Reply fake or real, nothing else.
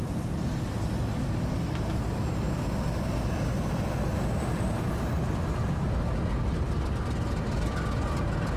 real